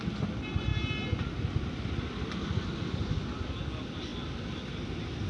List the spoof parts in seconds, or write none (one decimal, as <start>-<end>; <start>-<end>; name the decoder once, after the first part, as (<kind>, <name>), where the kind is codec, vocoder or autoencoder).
none